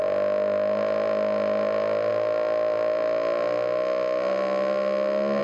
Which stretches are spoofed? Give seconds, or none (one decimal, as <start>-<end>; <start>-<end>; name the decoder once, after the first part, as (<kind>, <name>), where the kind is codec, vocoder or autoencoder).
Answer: none